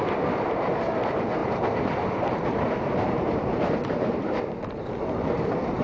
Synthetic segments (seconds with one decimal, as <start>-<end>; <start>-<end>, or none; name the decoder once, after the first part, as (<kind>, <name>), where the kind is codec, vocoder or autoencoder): 1.4-4.9 (vocoder, BigVGAN v2)